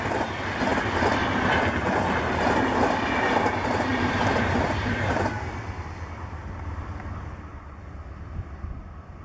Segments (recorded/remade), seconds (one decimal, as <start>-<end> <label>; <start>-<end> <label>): 0.0-0.7 recorded; 0.7-2.2 remade; 2.2-3.9 recorded; 3.9-7.0 remade; 7.0-9.2 recorded